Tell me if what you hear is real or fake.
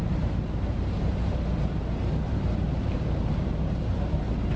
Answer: fake